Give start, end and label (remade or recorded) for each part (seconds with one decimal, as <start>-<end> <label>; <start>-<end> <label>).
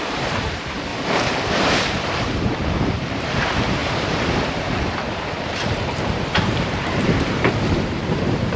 0.0-8.6 remade